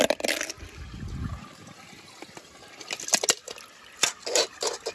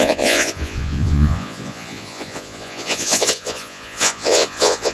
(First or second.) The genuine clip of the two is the first